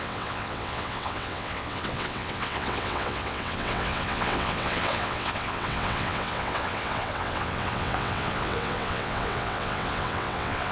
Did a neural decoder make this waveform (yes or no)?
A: yes